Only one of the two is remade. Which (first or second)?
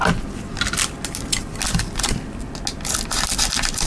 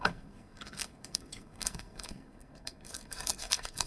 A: second